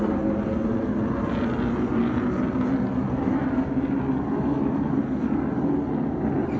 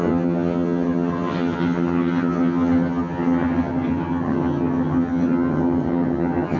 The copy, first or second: second